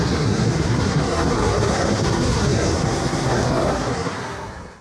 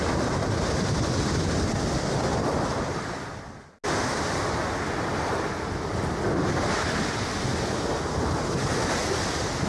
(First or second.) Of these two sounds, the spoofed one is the first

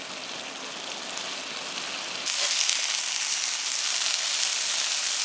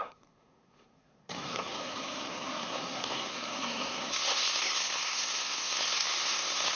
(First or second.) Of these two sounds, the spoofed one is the second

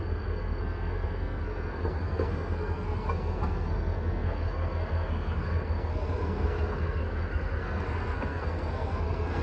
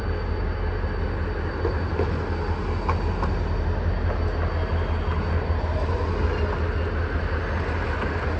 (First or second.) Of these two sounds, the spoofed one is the first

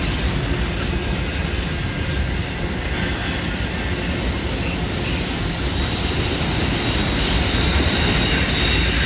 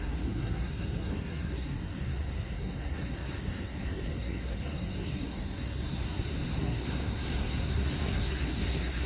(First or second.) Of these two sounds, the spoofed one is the second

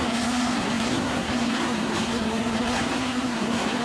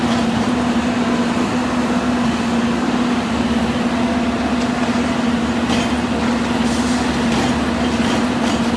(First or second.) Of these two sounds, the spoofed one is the first